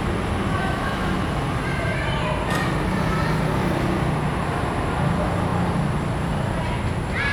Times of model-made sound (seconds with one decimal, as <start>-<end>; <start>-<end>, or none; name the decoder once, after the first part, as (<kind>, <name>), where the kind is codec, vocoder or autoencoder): 0.6-1.1 (autoencoder, DAC-VAE)